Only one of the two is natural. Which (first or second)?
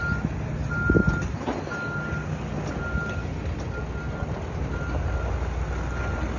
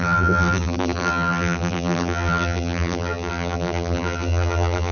first